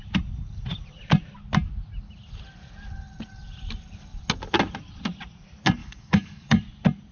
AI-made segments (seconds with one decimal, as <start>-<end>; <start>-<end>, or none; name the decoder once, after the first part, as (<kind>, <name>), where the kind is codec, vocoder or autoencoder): 5.8-6.6 (codec, DAC)